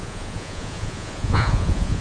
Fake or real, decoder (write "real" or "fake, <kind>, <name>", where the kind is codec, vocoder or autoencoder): fake, vocoder, Vocos